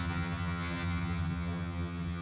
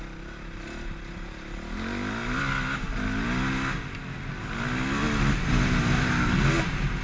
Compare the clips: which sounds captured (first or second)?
second